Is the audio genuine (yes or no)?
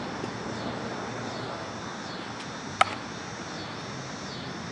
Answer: yes